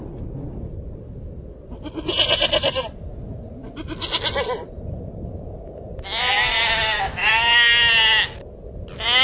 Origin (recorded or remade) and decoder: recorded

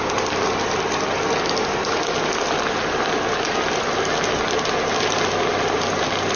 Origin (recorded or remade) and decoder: recorded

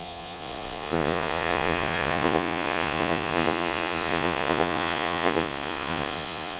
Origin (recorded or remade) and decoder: remade, vocoder, Vocos